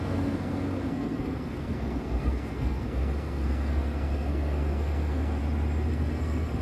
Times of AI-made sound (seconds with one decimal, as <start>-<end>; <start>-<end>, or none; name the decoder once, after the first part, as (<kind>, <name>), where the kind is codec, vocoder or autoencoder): 0.0-5.4 (codec, SNAC); 5.9-6.6